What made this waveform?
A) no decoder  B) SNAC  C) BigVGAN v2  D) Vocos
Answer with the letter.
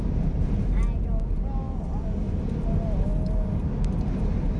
A